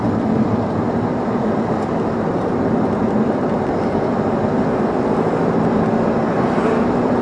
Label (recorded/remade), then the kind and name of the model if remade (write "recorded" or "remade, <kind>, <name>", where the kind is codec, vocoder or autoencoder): remade, vocoder, BigVGAN v2